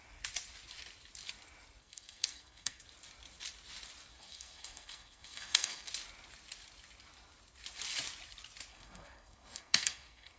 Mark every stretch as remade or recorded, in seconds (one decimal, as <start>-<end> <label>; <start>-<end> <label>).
0.0-1.8 recorded; 1.8-2.8 remade; 2.8-4.1 recorded; 4.1-5.9 remade; 5.9-8.7 recorded; 8.7-10.4 remade

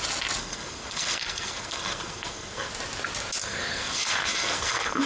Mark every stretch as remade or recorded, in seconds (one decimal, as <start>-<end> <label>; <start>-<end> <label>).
0.0-0.4 recorded; 0.4-2.7 remade; 2.7-3.4 recorded; 3.4-5.1 remade

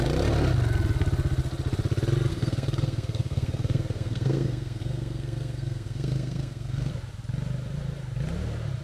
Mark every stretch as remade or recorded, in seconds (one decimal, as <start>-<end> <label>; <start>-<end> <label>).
0.0-2.3 recorded; 2.3-6.9 remade; 6.9-8.8 recorded

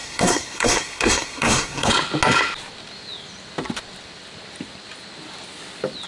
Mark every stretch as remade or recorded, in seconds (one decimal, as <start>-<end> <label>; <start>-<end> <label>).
0.0-1.9 remade; 1.9-6.1 recorded

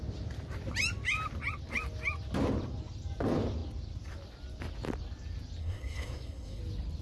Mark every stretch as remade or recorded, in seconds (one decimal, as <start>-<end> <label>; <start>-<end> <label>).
0.0-5.6 recorded; 5.6-6.6 remade; 6.6-7.0 recorded

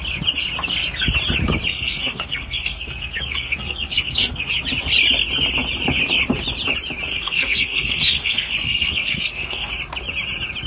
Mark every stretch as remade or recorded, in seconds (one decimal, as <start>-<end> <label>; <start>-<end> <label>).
0.0-1.7 recorded; 1.7-4.5 remade; 4.5-7.1 recorded; 7.1-9.7 remade; 9.7-10.7 recorded

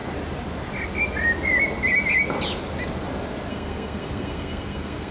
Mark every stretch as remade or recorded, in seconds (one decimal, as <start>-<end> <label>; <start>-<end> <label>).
0.0-3.5 recorded; 3.5-5.1 remade

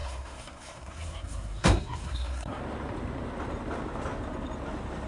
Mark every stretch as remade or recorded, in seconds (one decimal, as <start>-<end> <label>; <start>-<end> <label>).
0.0-2.6 remade; 2.6-5.1 recorded